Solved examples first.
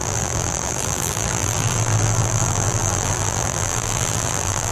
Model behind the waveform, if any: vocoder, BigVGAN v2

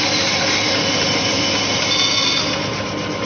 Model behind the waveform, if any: none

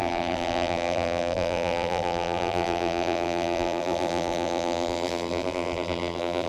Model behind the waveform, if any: vocoder, BigVGAN v2